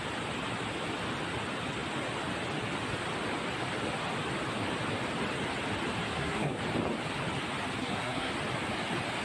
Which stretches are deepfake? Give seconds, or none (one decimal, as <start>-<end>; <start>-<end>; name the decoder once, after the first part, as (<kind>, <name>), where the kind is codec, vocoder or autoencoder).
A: 6.1-6.6 (codec, SNAC); 7.8-8.3